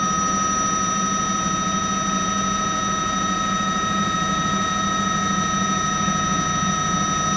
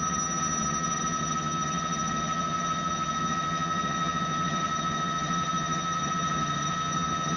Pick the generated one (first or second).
second